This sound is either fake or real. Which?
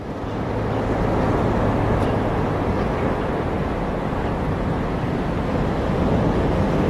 real